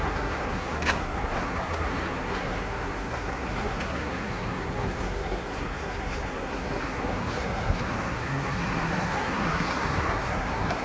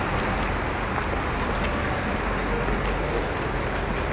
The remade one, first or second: first